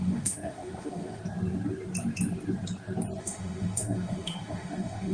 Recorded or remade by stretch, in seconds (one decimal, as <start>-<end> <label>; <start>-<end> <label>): 0.0-1.2 remade; 1.2-3.2 recorded; 3.2-5.1 remade